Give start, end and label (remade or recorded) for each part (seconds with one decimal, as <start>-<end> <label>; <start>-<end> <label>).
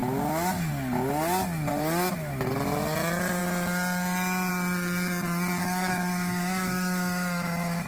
0.0-0.7 remade; 0.7-5.6 recorded; 5.6-7.9 remade